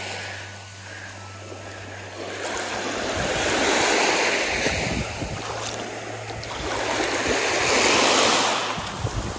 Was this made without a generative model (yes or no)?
yes